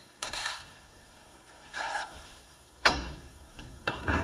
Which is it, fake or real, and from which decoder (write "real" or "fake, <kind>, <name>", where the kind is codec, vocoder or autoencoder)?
fake, codec, SNAC